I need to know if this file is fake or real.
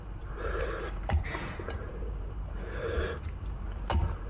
fake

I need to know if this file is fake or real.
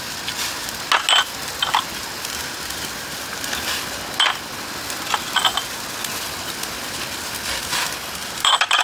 real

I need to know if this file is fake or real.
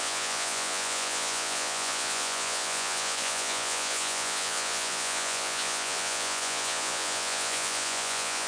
fake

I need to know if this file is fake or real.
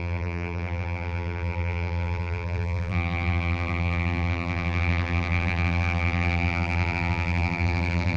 fake